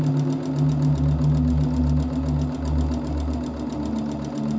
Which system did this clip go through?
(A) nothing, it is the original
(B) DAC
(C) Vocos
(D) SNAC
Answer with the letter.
A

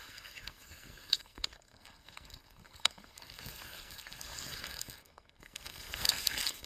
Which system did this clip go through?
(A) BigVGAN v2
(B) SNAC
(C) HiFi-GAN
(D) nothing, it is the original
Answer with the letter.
B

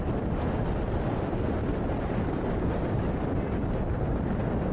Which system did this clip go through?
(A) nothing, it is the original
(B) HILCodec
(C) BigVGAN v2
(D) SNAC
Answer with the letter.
A